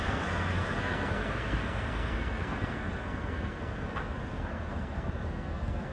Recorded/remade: remade